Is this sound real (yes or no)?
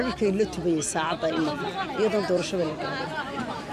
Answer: yes